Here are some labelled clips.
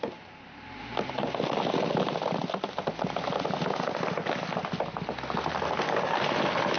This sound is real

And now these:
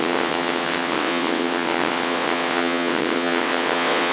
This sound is fake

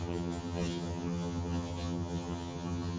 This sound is fake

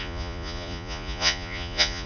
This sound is fake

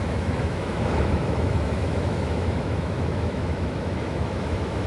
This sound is fake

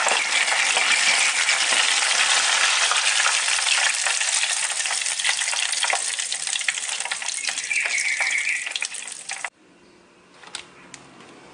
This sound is real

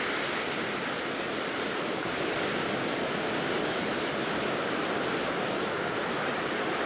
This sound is real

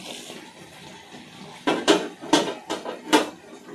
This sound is real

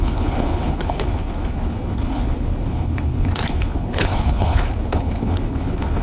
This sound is fake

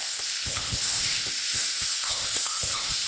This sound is fake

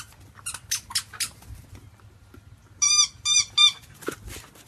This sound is real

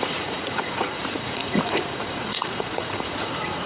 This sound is fake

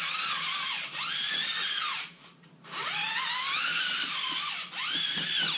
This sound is real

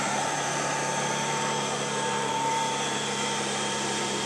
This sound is fake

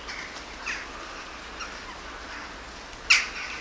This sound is real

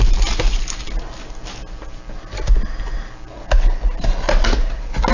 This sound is real